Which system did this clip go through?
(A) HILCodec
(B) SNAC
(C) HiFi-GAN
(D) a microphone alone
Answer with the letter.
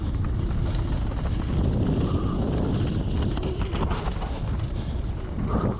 D